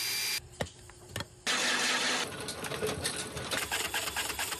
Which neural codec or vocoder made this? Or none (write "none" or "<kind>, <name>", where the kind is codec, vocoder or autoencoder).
none